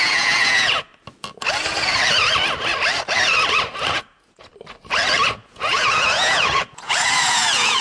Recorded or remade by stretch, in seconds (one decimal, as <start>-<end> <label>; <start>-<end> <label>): 0.0-0.9 remade; 0.9-3.9 recorded; 3.9-4.5 remade; 4.5-5.3 recorded; 5.3-7.8 remade